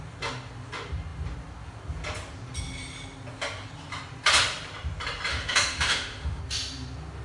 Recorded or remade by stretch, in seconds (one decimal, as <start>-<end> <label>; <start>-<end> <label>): 0.0-5.3 recorded; 5.3-6.4 remade; 6.4-7.2 recorded